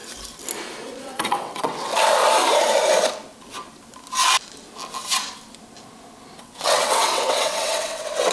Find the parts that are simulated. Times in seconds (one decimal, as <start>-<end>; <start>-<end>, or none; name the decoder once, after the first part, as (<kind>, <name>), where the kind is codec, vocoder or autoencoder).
1.0-1.9 (vocoder, WaveNeXt); 6.4-8.3